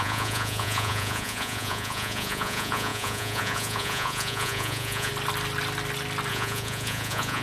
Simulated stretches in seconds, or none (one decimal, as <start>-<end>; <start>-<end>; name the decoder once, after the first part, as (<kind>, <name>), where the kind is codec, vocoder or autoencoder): 0.0-5.1 (vocoder, Vocos); 6.3-7.4